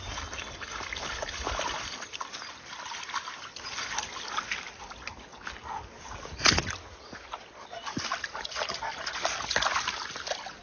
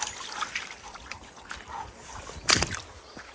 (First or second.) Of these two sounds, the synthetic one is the second